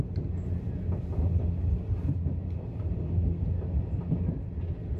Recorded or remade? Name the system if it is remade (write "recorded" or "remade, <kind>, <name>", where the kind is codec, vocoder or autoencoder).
recorded